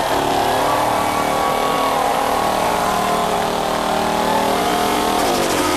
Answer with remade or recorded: recorded